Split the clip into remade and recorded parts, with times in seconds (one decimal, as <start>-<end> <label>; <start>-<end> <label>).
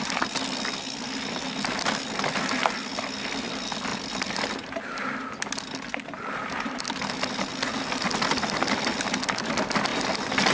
0.0-10.5 recorded